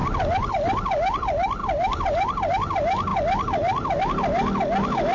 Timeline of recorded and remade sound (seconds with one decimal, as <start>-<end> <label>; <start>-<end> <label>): 0.0-0.5 remade; 0.5-1.6 recorded; 1.6-2.5 remade; 2.5-3.1 recorded; 3.1-4.0 remade; 4.0-5.1 recorded